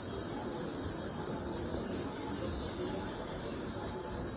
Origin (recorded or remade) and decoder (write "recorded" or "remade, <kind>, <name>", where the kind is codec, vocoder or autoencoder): recorded